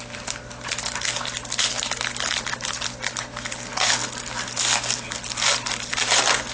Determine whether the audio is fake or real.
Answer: real